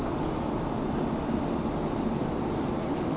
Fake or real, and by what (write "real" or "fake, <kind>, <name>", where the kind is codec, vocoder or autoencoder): real